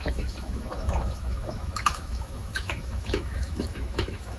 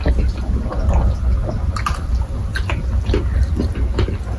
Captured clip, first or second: second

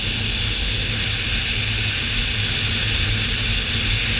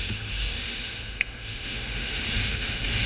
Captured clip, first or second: first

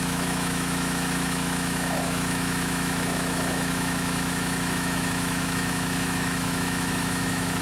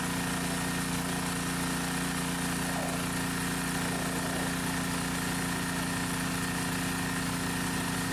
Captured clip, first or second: second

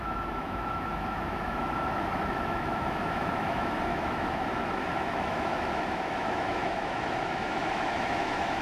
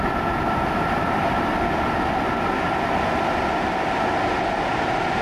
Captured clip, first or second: second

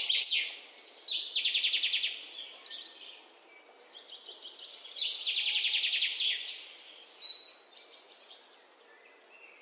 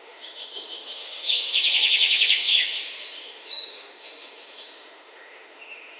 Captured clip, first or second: first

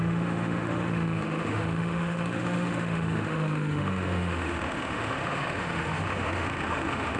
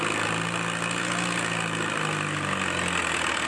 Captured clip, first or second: second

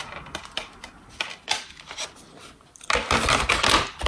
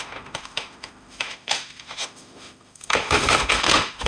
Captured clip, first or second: first